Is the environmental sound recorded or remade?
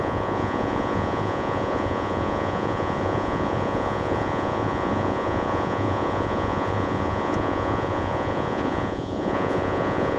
remade